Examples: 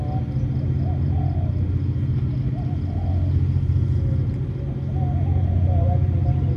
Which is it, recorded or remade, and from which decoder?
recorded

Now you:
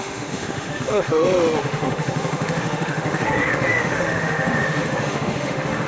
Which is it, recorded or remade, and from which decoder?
remade, autoencoder, DAC-VAE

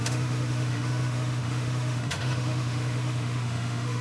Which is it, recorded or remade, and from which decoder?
remade, autoencoder, DAC-VAE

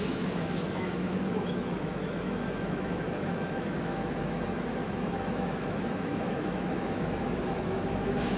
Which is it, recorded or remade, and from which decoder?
remade, autoencoder, DAC-VAE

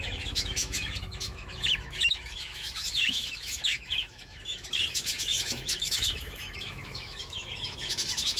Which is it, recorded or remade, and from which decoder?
remade, autoencoder, DAC-VAE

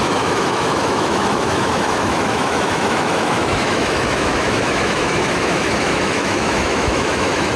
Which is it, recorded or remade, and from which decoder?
remade, autoencoder, DAC-VAE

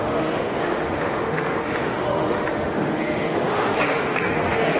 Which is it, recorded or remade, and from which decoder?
remade, autoencoder, DAC-VAE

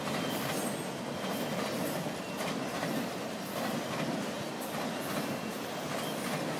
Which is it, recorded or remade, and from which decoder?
recorded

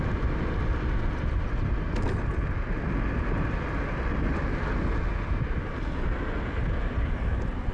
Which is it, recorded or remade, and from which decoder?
recorded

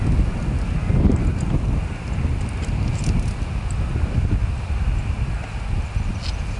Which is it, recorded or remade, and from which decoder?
recorded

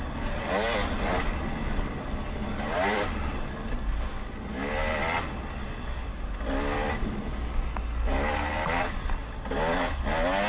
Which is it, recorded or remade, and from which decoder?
recorded